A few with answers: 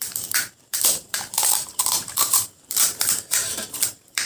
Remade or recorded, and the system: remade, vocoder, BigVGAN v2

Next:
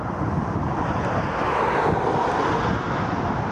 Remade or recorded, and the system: recorded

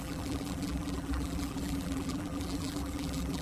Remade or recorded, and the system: remade, vocoder, BigVGAN v2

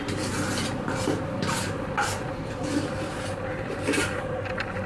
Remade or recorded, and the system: recorded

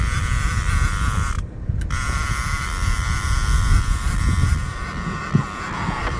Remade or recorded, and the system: recorded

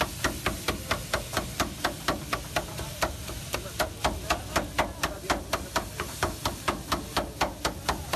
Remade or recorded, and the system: recorded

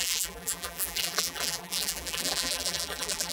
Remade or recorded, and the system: remade, vocoder, BigVGAN v2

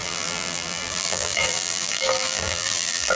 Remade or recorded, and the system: remade, vocoder, BigVGAN v2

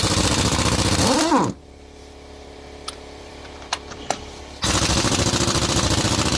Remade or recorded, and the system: remade, vocoder, BigVGAN v2